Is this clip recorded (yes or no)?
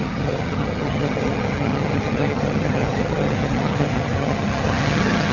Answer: no